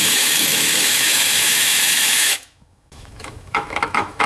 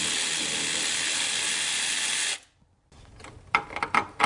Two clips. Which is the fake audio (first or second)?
first